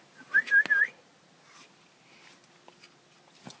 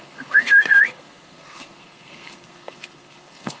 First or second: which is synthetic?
second